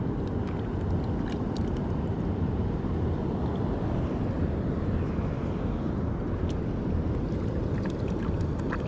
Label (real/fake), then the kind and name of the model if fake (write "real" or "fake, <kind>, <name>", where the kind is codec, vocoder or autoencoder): real